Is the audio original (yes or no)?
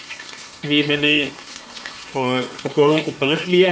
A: no